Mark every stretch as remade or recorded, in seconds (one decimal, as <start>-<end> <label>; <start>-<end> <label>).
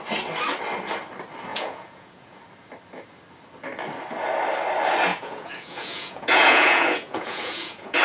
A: 0.0-1.5 recorded; 1.5-2.4 remade; 2.4-5.1 recorded; 5.1-8.0 remade